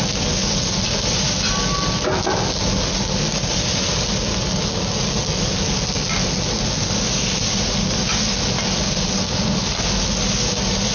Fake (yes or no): no